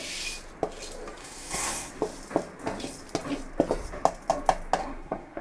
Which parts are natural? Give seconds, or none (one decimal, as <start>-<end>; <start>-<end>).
0.0-1.2; 1.9-4.8